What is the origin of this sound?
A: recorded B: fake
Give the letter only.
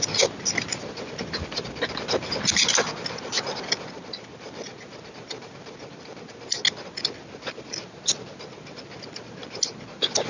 A